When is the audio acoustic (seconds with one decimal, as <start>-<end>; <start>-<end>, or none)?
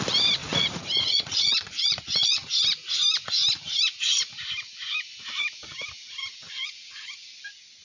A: 0.0-0.4; 2.5-6.6; 7.1-7.8